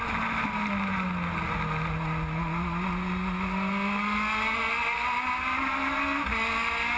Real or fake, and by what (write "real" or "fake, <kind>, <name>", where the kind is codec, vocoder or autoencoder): real